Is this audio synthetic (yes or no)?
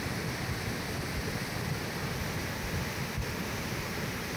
no